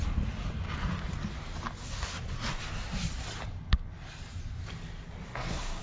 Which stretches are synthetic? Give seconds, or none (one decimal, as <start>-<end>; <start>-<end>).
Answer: 1.8-2.6; 5.3-5.8